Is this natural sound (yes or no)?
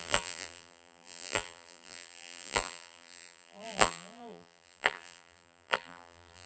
no